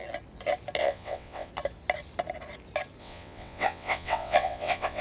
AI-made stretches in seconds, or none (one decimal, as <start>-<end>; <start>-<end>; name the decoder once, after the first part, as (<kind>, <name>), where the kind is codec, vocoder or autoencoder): 0.8-1.5 (vocoder, WaveNeXt); 3.0-5.0